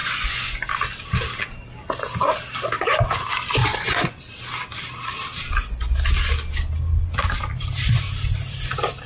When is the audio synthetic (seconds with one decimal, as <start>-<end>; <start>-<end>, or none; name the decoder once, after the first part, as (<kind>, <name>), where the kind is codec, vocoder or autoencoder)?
0.0-0.7 (vocoder, Vocos); 3.6-4.2